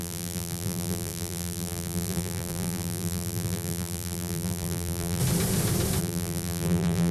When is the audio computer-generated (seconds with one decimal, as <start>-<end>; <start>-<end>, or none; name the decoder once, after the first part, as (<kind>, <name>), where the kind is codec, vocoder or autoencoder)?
0.0-5.2 (vocoder, BigVGAN v2); 6.0-7.1